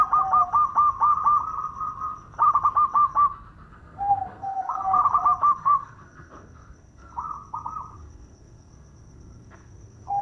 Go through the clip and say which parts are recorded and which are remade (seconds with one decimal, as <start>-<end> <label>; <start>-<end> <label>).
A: 0.0-3.7 recorded; 3.7-5.0 remade; 5.0-5.6 recorded; 5.6-7.1 remade; 7.1-7.9 recorded; 7.9-10.2 remade